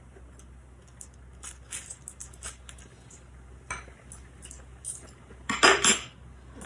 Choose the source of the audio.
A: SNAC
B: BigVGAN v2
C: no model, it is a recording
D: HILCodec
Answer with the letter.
C